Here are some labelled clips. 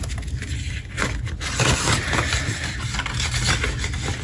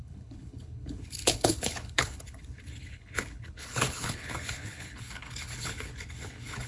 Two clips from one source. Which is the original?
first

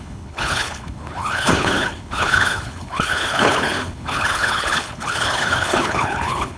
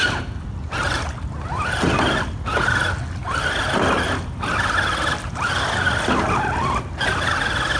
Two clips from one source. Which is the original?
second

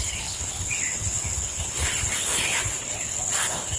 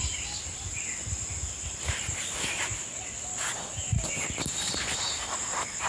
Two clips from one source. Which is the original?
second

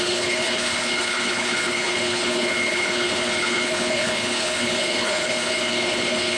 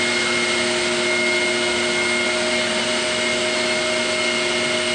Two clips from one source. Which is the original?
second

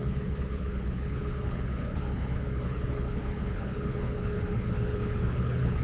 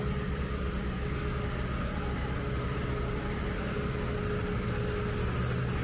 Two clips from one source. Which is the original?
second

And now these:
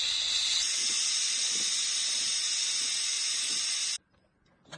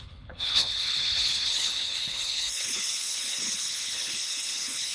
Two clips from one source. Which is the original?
first